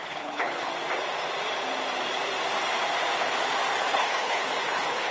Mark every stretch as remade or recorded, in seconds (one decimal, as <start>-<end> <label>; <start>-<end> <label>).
0.0-0.7 remade; 0.7-3.8 recorded; 3.8-5.1 remade

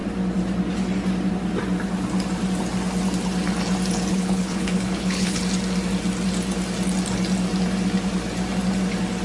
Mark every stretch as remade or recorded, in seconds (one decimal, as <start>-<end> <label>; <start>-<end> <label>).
0.0-4.1 recorded; 4.1-5.4 remade; 5.4-9.2 recorded

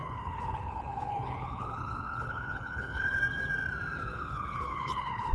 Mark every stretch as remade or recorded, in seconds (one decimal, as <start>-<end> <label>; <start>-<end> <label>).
0.0-3.2 remade; 3.2-4.1 recorded; 4.1-5.3 remade

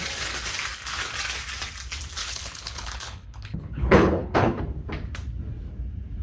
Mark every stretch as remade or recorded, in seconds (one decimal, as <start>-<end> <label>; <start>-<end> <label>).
0.0-2.2 recorded; 2.2-4.6 remade; 4.6-6.2 recorded

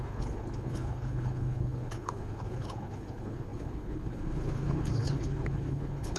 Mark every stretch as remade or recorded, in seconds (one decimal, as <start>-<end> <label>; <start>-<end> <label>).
0.0-6.2 remade

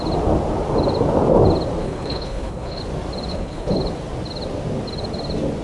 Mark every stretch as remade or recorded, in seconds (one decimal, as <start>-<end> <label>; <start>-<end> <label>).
0.0-1.8 recorded; 1.8-2.8 remade; 2.8-3.3 recorded; 3.3-3.8 remade; 3.8-5.6 recorded

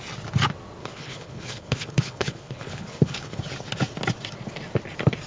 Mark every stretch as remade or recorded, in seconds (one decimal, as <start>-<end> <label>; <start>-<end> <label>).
0.0-0.8 recorded; 0.8-3.4 remade; 3.4-5.3 recorded